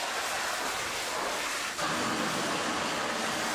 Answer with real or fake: real